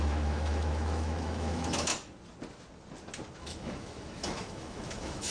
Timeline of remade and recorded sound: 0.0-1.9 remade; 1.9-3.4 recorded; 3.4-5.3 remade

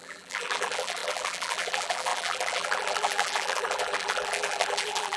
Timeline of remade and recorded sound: 0.0-5.2 remade